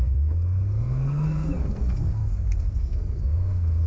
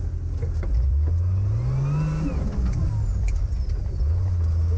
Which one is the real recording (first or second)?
second